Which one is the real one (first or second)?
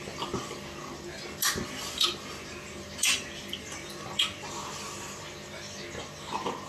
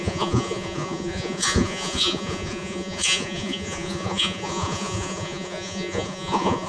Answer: first